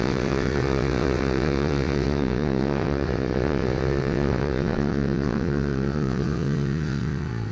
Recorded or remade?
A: remade